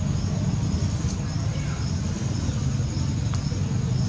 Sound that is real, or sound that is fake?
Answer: real